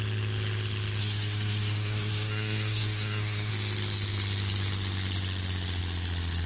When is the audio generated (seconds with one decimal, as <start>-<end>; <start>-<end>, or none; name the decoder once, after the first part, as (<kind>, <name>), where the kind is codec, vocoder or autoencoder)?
1.0-3.5 (codec, SNAC)